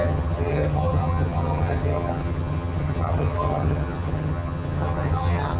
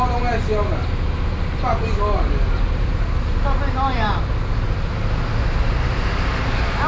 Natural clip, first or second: second